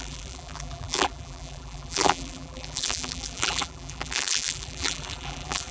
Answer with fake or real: fake